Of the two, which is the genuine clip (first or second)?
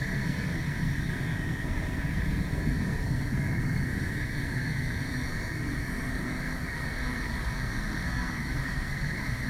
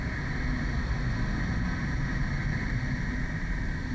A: second